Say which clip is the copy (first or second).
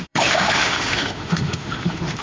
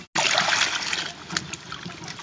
first